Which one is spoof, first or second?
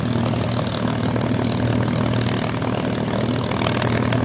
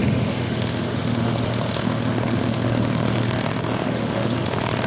second